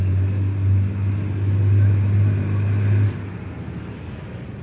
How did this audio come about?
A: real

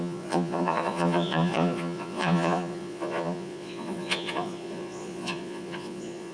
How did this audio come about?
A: fake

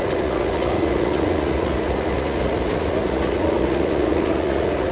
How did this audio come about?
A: fake